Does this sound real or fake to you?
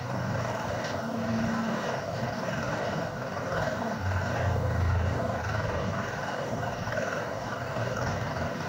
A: fake